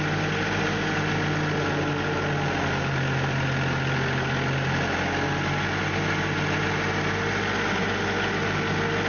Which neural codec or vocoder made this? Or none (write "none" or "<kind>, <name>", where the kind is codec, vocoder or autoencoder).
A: none